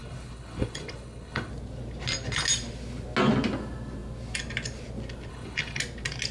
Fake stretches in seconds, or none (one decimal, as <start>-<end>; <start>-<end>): 0.0-1.5; 5.3-5.8